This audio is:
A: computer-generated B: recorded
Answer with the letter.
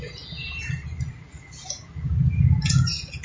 A